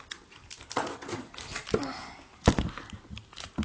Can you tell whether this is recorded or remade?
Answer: recorded